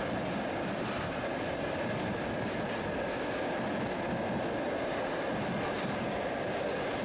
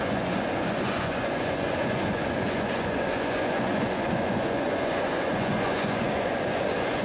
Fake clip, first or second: second